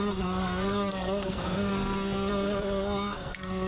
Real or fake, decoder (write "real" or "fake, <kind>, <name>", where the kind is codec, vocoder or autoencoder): fake, codec, SNAC